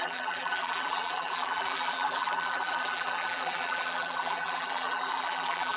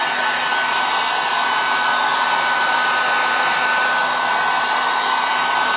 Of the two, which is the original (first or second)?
second